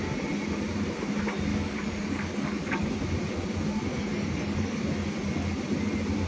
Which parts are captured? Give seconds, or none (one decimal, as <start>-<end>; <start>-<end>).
0.0-1.5; 2.9-3.9; 4.8-6.3